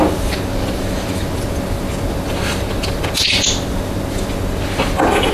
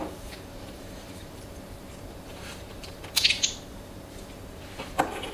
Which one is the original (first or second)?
first